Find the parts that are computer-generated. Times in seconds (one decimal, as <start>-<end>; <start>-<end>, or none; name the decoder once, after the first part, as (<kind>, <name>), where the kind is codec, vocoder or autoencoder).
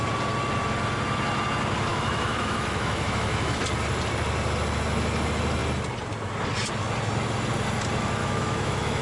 1.9-3.6 (autoencoder, DAC-VAE); 8.2-9.0